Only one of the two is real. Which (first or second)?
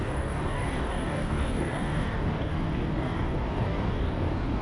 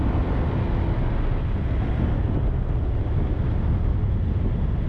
second